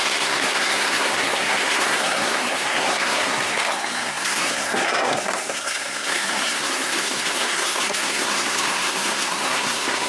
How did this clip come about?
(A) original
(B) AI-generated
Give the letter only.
B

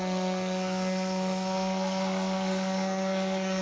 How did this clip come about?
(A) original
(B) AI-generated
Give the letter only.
B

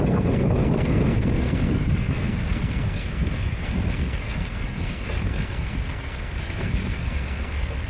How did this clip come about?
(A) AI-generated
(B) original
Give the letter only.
A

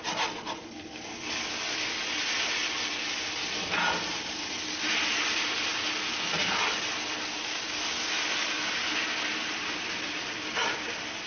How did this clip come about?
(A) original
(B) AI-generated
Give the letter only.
A